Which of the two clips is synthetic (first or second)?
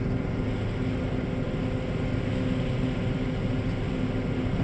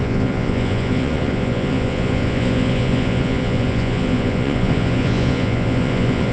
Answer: second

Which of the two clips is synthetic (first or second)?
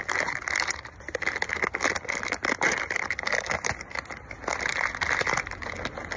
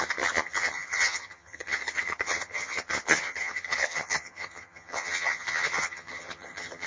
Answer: second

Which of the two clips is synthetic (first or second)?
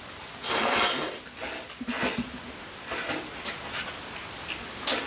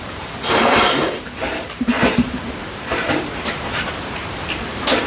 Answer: second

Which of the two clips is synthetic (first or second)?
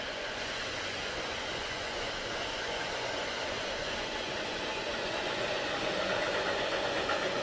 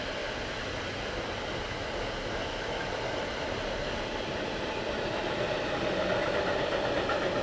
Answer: first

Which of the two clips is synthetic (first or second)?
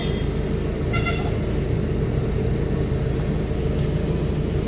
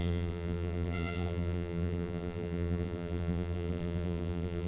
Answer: second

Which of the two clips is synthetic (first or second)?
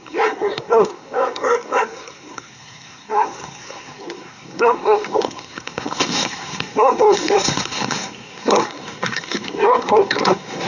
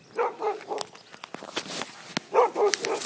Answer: first